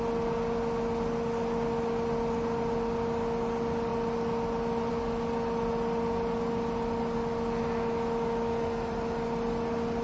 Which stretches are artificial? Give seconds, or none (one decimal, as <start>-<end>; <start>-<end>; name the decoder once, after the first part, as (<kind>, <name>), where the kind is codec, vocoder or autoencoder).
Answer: none